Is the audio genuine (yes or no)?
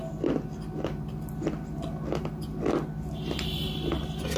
yes